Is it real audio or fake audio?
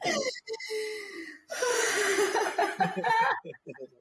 real